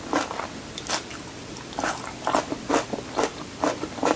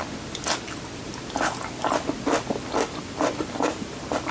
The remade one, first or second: first